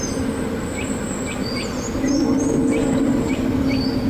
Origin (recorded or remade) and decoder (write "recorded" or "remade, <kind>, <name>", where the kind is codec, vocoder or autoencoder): recorded